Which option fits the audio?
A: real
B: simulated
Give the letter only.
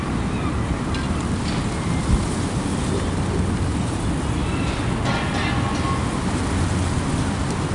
A